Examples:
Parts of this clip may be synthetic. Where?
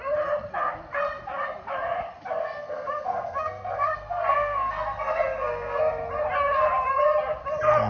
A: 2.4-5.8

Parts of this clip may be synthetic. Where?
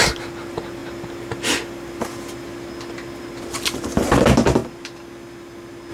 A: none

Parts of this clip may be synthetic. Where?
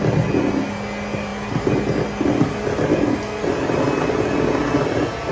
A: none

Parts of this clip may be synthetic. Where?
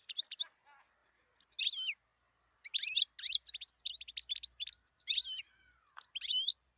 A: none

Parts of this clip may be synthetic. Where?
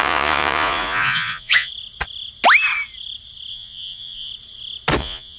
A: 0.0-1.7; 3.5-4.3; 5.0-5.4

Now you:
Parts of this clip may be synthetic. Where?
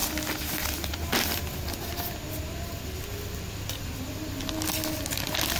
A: none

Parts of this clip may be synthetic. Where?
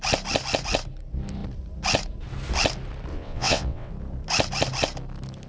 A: 3.1-3.9